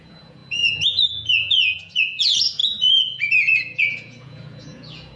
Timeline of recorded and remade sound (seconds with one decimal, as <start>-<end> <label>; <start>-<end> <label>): 0.0-5.2 remade